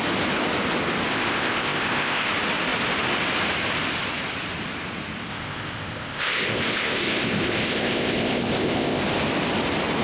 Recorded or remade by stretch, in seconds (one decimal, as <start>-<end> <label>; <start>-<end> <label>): 0.0-1.1 recorded; 1.1-2.3 remade; 2.3-5.3 recorded; 5.3-9.0 remade; 9.0-10.0 recorded